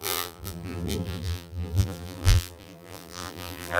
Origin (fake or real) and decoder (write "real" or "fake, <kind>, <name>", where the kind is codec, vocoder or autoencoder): fake, vocoder, BigVGAN v2